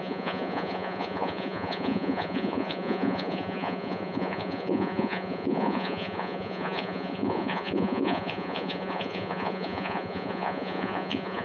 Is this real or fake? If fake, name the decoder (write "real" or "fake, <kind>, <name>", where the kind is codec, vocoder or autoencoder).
fake, vocoder, Vocos